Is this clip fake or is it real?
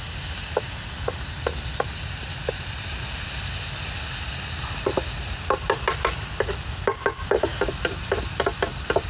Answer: real